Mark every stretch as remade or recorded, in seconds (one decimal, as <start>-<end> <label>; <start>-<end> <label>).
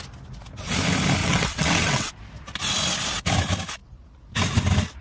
0.0-1.2 recorded; 1.2-2.1 remade; 2.1-5.0 recorded